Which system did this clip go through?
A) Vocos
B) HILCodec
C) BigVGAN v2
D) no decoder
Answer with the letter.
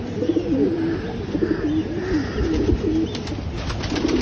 D